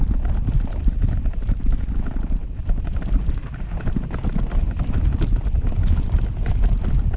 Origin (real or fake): real